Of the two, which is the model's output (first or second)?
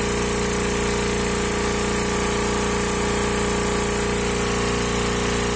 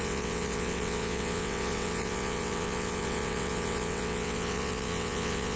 second